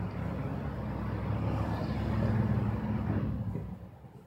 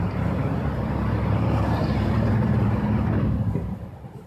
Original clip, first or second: first